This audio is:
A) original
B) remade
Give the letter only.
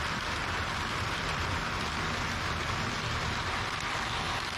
A